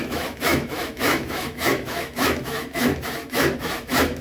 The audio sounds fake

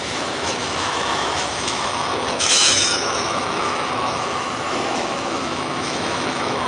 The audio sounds fake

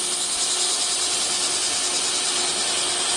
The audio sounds real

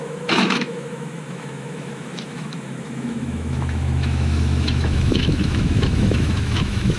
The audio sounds fake